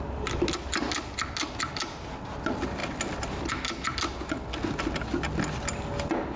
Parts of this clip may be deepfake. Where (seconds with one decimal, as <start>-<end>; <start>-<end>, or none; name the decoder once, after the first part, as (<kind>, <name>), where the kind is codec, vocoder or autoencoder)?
none